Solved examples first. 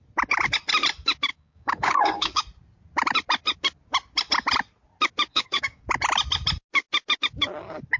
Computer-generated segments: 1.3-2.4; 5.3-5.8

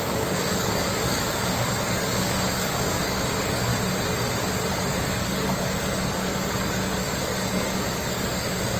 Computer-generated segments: 0.0-3.7; 4.7-8.8

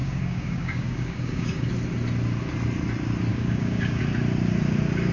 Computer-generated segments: 0.0-1.7; 3.3-4.0

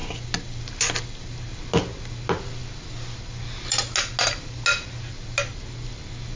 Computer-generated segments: none

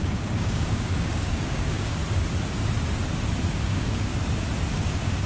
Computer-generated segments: 0.0-2.0; 3.5-4.1; 4.7-5.3